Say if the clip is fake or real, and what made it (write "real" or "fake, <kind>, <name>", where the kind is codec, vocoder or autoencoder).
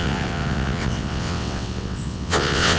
fake, vocoder, WaveNeXt